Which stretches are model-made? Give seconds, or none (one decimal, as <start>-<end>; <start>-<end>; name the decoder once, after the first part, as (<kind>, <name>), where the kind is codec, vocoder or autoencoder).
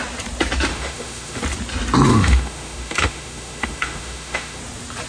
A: 0.7-1.4 (autoencoder, DAC-VAE); 2.1-4.6